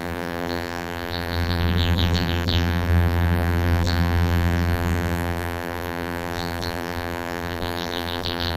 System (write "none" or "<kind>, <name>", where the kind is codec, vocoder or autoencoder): vocoder, BigVGAN v2